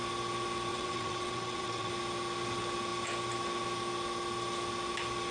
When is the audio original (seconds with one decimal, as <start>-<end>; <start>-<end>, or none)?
0.0-0.7; 1.9-5.3